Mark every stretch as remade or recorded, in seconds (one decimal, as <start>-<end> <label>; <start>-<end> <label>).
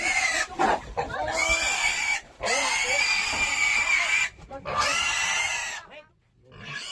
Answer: 0.0-1.4 remade; 1.4-5.5 recorded; 5.5-6.9 remade